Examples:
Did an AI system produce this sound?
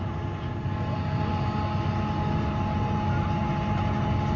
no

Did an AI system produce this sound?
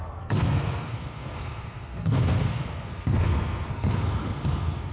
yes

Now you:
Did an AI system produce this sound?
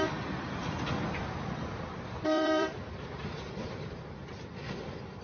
yes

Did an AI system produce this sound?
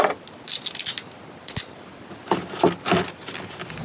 no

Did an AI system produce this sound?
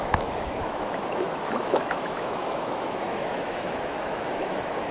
yes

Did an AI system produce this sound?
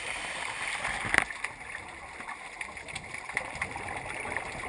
no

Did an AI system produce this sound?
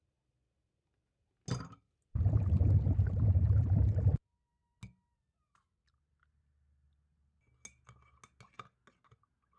no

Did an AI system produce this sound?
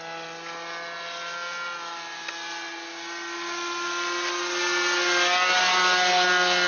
no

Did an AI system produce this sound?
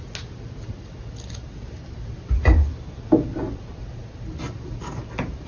no